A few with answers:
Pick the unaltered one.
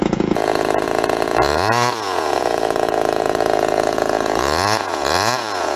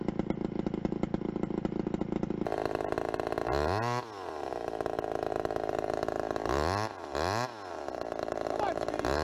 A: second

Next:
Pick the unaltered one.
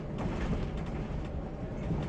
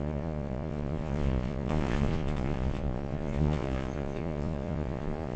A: first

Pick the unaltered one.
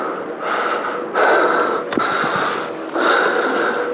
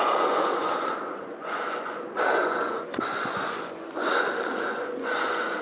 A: first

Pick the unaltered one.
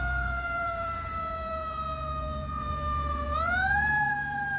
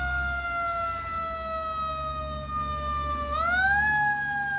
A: second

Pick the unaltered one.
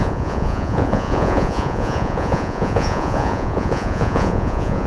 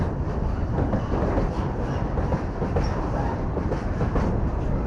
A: second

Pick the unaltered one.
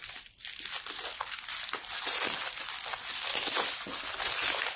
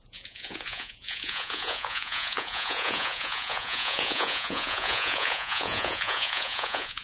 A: first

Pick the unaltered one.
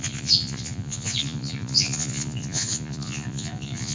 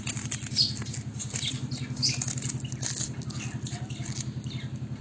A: second